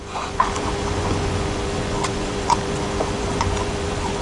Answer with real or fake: fake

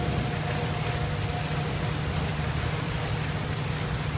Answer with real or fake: real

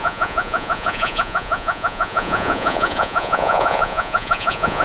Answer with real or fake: fake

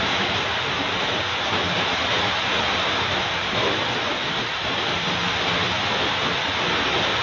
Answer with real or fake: real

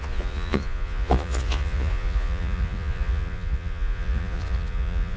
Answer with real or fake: fake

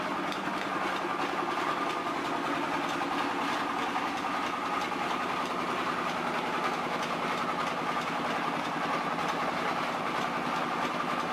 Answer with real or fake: real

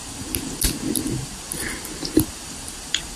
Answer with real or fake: real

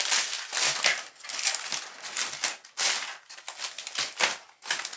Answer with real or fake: real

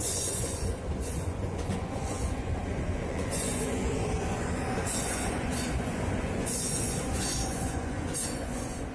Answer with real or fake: fake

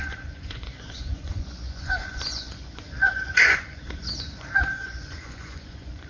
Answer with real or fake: fake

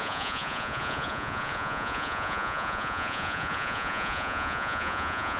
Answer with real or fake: fake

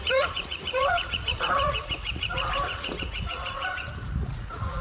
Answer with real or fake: fake